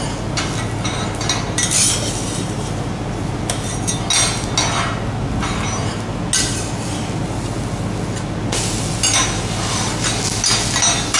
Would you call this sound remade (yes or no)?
no